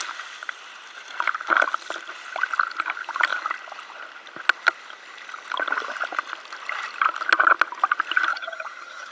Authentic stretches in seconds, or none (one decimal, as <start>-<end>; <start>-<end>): 0.0-8.3